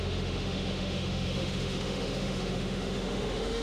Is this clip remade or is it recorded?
remade